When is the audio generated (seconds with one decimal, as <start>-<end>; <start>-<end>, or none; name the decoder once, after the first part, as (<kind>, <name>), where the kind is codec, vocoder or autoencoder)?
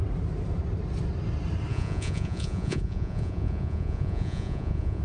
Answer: 1.7-5.0 (vocoder, Vocos)